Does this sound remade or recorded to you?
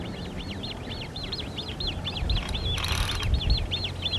recorded